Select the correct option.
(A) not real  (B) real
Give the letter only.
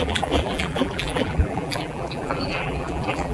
A